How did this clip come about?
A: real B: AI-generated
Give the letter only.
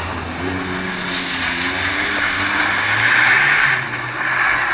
A